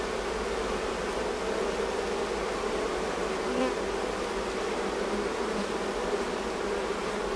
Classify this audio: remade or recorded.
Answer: recorded